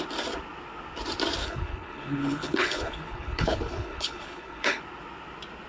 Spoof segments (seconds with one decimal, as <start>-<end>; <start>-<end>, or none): 1.4-4.8